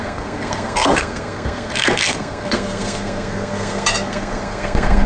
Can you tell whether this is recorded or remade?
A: remade